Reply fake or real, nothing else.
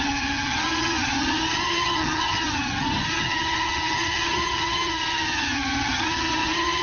fake